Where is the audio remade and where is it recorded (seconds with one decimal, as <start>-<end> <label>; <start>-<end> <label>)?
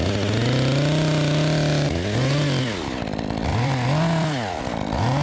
0.0-3.5 recorded; 3.5-4.6 remade; 4.6-5.2 recorded